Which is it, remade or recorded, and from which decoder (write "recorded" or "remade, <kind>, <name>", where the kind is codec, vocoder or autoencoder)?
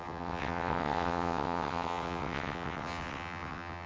remade, vocoder, WaveNeXt